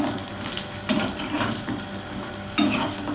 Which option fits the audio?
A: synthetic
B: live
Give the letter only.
B